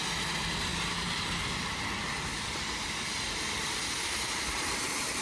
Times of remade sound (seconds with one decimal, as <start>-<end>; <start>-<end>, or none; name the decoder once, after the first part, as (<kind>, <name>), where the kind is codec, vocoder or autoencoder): none